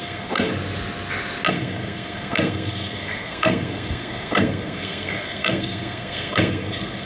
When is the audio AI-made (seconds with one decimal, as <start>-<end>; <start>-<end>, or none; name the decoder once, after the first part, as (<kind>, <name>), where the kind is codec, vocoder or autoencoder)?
0.0-0.5 (codec, SNAC); 1.5-7.1